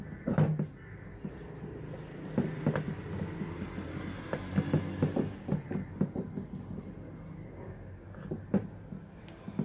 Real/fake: real